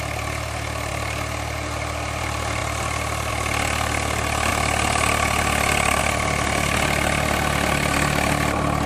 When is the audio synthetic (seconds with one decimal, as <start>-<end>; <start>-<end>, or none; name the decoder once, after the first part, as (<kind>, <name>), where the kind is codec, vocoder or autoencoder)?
none